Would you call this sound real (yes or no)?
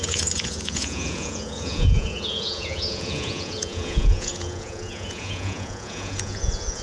no